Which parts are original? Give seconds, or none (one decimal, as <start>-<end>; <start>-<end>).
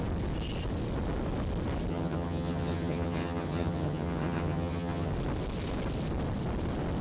0.0-1.9; 5.1-7.0